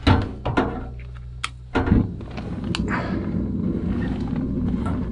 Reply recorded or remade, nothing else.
recorded